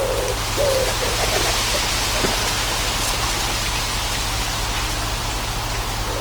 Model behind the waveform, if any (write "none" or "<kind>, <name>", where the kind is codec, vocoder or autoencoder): none